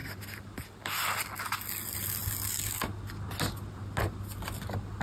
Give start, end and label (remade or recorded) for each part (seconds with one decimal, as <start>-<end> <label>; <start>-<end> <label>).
0.0-5.0 recorded